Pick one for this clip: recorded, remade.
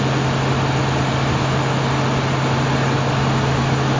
recorded